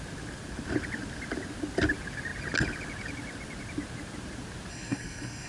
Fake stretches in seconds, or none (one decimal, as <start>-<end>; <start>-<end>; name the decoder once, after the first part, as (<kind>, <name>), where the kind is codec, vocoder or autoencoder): 4.7-5.5 (codec, SNAC)